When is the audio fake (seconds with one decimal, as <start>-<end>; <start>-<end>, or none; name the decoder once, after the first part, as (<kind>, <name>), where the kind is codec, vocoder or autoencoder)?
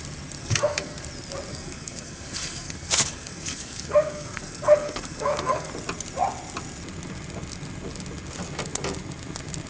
0.4-1.0 (codec, SNAC); 1.5-5.7